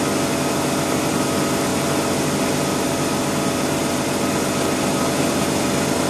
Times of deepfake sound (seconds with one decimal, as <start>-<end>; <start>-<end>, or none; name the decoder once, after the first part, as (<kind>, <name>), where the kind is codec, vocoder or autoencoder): none